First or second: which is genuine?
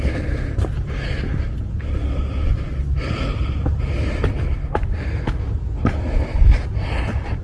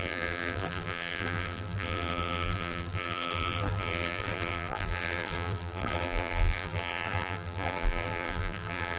first